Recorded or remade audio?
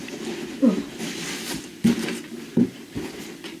recorded